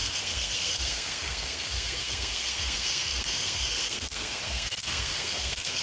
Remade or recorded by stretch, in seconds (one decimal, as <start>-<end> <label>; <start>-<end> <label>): 0.0-5.8 remade